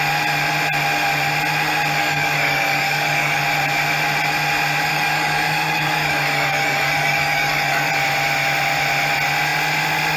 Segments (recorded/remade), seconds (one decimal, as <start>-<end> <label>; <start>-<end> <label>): 0.0-2.0 recorded; 2.0-3.4 remade; 3.4-4.9 recorded; 4.9-7.9 remade; 7.9-10.2 recorded